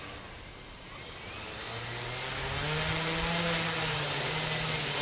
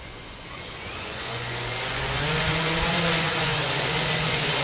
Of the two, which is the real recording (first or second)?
first